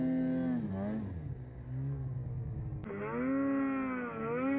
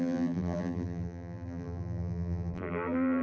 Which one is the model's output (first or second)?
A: second